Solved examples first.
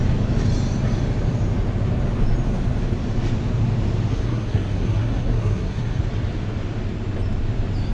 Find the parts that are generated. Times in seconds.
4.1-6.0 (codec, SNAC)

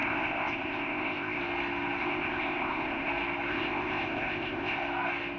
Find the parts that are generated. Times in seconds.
0.0-1.4 (codec, ZipCodec); 2.0-3.1; 3.5-4.8

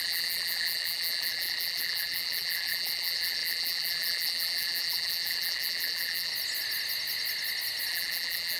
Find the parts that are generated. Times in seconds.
0.0-6.3 (vocoder, BigVGAN v2); 7.9-8.6

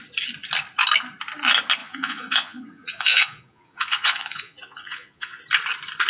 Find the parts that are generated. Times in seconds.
1.8-5.4 (vocoder, Vocos)

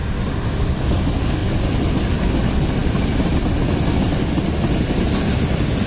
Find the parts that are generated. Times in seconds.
2.8-3.4 (vocoder, BigVGAN v2)

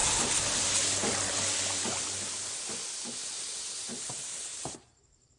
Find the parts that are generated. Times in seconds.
4.5-5.0 (vocoder, BigVGAN v2)